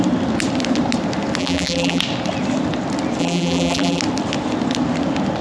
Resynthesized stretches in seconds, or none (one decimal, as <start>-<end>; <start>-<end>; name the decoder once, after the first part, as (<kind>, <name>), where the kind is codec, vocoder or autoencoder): 1.4-2.0 (vocoder, BigVGAN v2); 3.2-4.0